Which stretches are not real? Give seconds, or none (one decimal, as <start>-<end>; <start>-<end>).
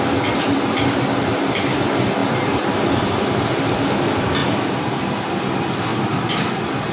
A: 5.9-6.5